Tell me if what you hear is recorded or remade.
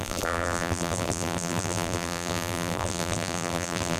remade